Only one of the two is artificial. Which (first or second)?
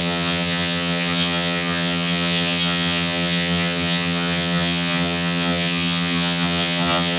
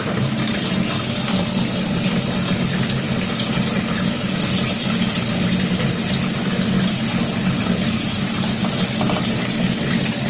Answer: first